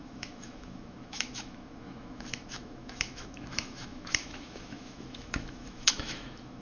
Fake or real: fake